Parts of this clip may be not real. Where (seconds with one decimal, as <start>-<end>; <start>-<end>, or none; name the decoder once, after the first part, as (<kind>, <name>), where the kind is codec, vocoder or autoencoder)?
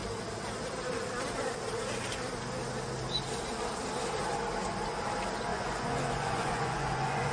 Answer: 5.5-7.3 (vocoder, Vocos)